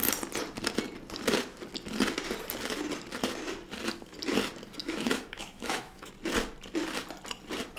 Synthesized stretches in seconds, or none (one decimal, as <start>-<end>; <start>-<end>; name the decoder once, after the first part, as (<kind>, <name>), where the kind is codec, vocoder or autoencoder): 4.8-6.1 (autoencoder, DAC-VAE)